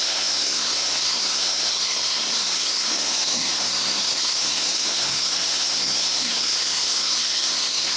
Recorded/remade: remade